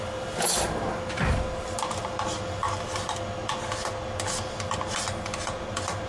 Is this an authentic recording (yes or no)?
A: yes